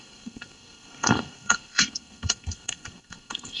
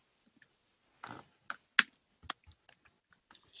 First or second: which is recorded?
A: second